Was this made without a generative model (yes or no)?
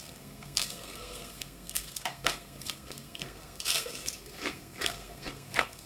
no